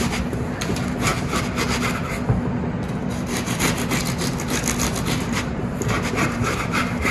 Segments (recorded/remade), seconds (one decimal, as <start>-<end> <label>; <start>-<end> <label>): 0.0-1.1 remade; 1.1-5.0 recorded; 5.0-7.1 remade